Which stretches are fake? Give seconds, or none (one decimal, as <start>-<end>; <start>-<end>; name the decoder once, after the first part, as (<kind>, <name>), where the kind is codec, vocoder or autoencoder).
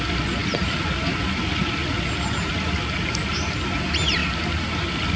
none